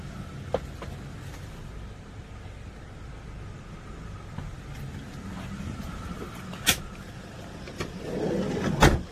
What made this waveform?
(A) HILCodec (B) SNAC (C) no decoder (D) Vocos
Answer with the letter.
C